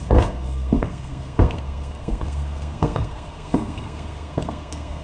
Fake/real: fake